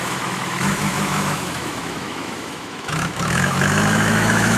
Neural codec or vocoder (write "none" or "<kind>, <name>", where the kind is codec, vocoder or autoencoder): autoencoder, DAC-VAE